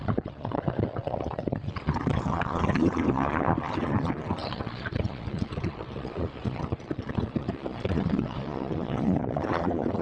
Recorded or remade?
remade